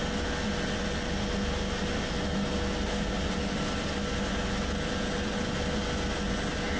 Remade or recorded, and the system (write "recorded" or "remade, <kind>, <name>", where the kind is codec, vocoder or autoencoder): recorded